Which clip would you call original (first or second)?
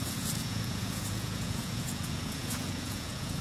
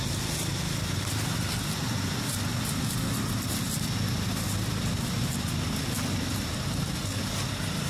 second